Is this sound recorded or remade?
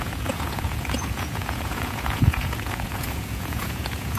remade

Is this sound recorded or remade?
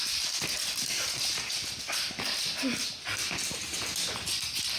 recorded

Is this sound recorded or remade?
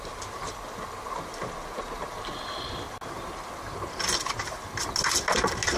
recorded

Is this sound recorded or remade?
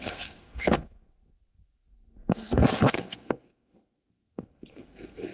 remade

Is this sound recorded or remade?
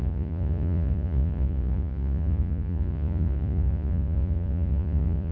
remade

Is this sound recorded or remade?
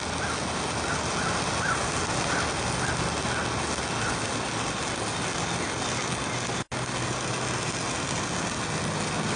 recorded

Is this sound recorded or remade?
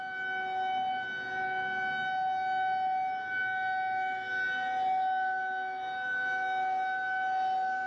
recorded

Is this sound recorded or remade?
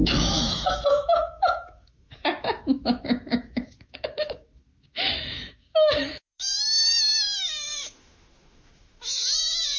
remade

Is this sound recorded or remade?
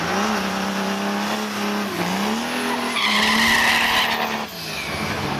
recorded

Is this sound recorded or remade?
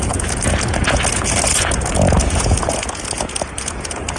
remade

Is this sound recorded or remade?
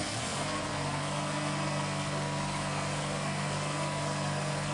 remade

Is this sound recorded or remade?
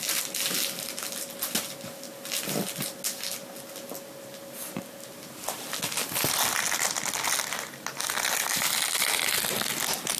recorded